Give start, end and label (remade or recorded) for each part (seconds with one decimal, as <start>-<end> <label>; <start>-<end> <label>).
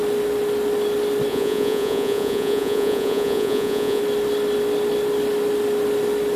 0.0-1.3 recorded; 1.3-4.0 remade; 4.0-6.4 recorded